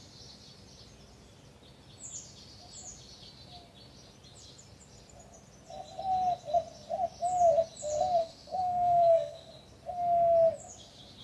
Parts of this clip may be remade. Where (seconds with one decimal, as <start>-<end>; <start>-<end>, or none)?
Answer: 8.2-9.5